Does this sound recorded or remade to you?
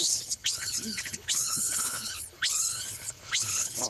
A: remade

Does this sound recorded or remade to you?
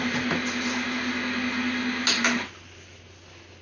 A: recorded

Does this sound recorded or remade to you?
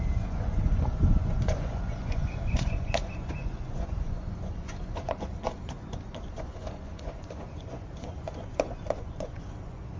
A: remade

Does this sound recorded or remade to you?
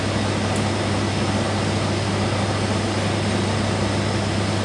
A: recorded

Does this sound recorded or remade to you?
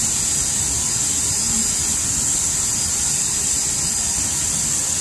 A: recorded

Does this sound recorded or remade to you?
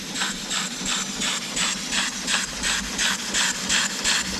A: recorded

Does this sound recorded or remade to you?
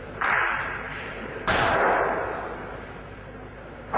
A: remade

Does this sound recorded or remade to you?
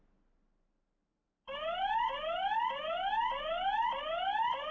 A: recorded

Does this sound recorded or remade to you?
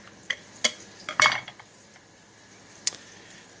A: recorded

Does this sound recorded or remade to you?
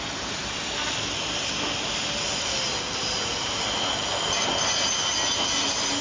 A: recorded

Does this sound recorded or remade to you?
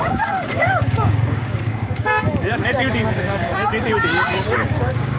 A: remade